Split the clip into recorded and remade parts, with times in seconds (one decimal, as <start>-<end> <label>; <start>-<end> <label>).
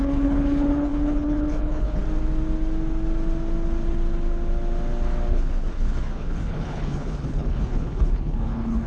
0.0-2.0 remade; 2.0-5.3 recorded; 5.3-8.9 remade